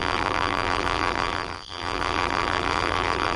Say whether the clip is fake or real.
fake